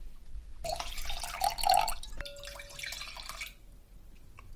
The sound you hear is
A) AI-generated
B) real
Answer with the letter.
B